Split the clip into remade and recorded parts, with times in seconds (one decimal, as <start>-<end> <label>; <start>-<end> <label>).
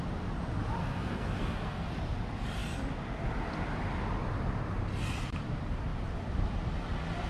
0.0-0.8 recorded; 0.8-1.9 remade; 1.9-7.3 recorded